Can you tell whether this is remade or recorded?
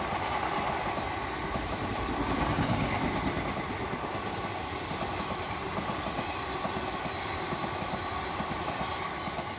recorded